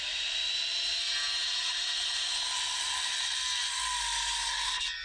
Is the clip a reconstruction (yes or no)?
no